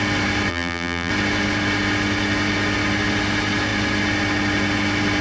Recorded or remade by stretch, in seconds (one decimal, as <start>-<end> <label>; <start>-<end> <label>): 0.0-0.5 recorded; 0.5-1.1 remade; 1.1-5.2 recorded